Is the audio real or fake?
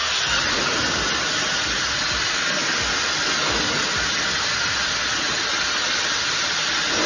real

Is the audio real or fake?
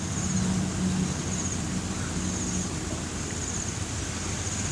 real